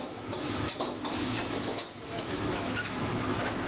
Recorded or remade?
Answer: remade